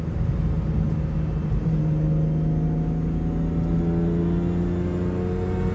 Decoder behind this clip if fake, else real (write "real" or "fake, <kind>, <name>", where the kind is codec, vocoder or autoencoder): real